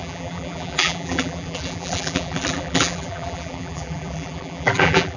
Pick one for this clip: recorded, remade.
remade